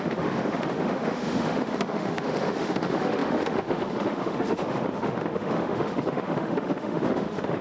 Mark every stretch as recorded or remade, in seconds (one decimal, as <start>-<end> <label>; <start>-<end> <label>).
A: 0.0-7.6 remade